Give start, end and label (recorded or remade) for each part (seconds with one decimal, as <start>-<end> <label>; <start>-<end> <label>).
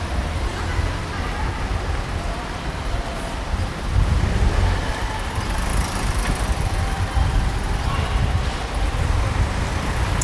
0.0-10.2 remade